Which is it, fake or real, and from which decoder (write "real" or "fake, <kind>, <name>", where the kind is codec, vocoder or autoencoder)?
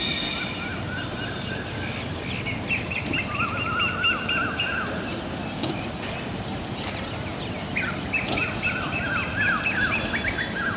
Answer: real